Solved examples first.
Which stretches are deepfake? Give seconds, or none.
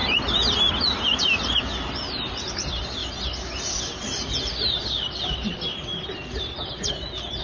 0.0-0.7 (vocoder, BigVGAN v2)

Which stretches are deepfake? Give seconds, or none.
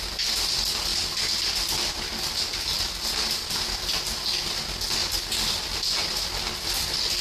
none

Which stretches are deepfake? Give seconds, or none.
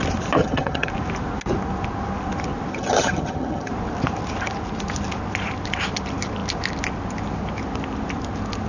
0.4-0.9 (vocoder, HiFi-GAN); 2.7-3.7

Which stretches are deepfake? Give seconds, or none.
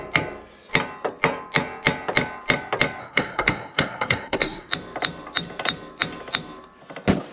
3.0-4.7 (codec, SNAC)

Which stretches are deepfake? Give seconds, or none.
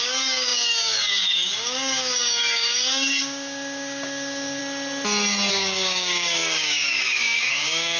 0.0-4.6 (codec, DAC); 5.5-8.0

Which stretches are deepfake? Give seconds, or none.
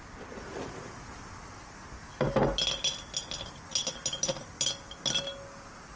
none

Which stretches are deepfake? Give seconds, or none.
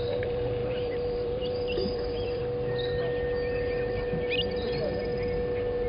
0.0-2.4 (vocoder, BigVGAN v2); 4.5-5.1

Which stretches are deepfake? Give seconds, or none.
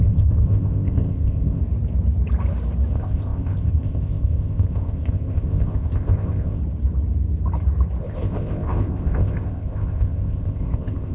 0.0-1.6 (codec, ZipCodec); 2.9-6.6; 8.0-11.1